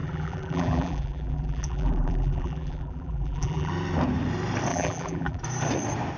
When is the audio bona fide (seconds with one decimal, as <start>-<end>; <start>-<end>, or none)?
3.7-4.7; 5.4-6.2